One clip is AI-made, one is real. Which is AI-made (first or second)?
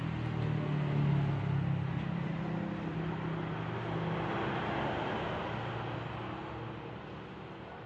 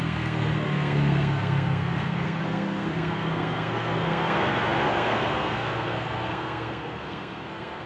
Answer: second